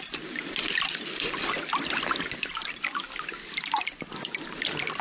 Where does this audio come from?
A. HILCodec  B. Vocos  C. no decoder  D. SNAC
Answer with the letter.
C